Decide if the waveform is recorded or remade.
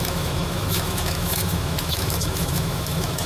remade